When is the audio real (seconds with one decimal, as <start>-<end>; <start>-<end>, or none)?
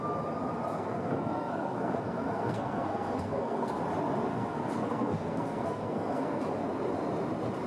0.0-0.7; 3.8-4.3; 6.4-7.7